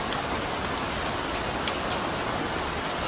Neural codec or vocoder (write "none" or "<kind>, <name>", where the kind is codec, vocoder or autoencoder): none